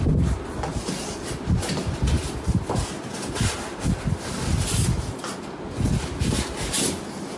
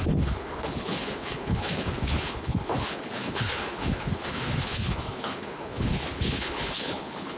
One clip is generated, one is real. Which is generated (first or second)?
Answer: second